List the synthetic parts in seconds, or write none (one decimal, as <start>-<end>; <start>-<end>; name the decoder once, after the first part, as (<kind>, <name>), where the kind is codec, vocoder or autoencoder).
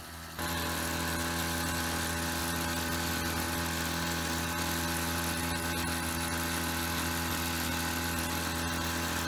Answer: none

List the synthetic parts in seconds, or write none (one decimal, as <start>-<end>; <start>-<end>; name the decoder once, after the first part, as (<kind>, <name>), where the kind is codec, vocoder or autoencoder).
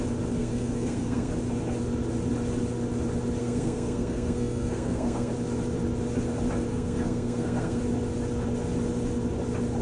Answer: 0.4-1.3 (codec, SNAC); 3.4-5.3; 6.7-7.8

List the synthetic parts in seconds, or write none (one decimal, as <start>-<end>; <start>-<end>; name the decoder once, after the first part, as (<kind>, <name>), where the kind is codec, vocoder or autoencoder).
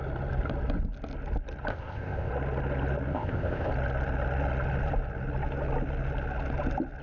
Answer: 1.7-2.3 (codec, ZipCodec); 3.1-3.7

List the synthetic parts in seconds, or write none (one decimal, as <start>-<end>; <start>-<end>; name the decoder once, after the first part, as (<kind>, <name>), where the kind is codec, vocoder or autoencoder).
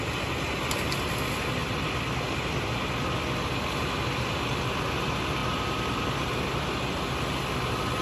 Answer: none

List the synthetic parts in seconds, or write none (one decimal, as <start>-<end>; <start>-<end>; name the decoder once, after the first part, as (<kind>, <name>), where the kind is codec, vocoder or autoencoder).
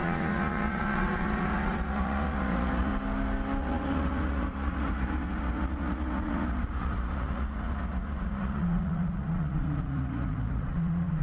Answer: 0.0-2.9 (vocoder, Vocos); 3.6-11.2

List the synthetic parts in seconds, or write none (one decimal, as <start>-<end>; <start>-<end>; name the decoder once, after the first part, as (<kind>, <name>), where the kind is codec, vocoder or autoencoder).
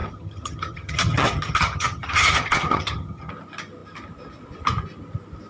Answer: 0.0-3.3 (vocoder, HiFi-GAN)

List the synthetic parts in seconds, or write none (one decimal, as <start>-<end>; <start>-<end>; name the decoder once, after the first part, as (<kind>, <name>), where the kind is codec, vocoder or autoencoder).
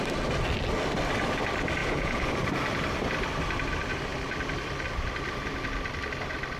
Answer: 1.8-2.3 (vocoder, Vocos)